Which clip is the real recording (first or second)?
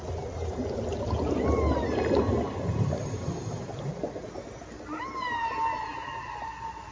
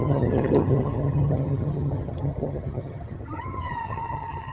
first